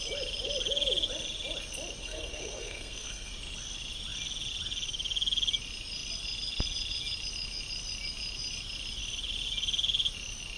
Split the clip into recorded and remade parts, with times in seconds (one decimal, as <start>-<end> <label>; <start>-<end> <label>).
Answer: 0.0-2.0 recorded; 2.0-3.3 remade; 3.3-10.6 recorded